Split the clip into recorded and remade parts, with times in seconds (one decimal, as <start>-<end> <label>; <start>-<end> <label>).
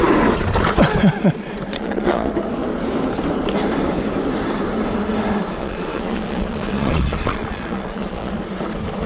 0.0-1.7 recorded; 1.7-2.3 remade; 2.3-5.6 recorded; 5.6-8.3 remade; 8.3-9.1 recorded